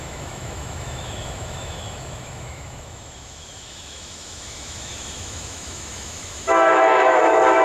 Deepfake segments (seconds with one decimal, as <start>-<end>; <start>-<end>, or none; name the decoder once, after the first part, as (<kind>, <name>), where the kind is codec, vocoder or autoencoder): 0.0-7.6 (autoencoder, DAC-VAE)